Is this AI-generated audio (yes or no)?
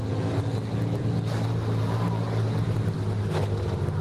no